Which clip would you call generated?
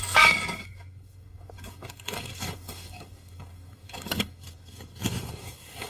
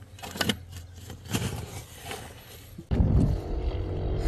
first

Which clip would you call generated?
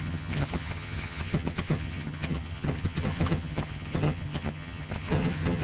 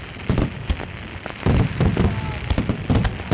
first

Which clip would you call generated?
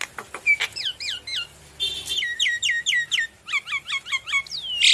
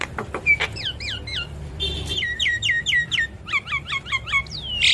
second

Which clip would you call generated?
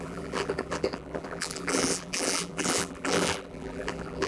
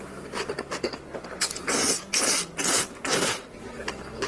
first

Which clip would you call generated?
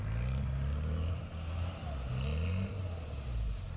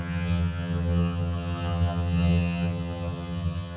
second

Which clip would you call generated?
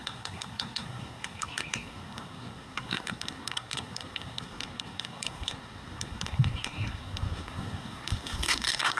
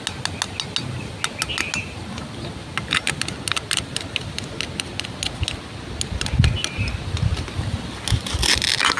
first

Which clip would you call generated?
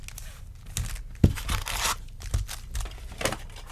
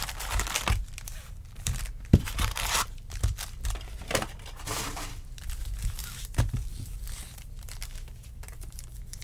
second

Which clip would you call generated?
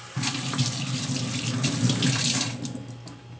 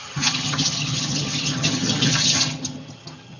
second